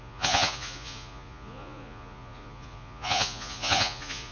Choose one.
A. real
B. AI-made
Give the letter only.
B